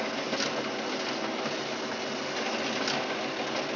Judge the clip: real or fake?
real